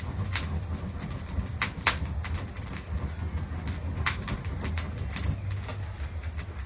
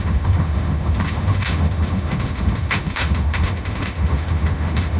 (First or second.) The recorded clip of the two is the first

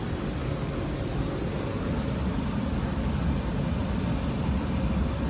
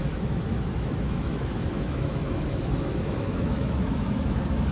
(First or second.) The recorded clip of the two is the first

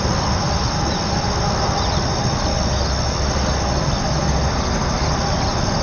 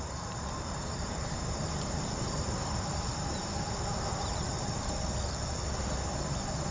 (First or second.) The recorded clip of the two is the first